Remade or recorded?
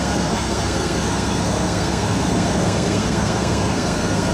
remade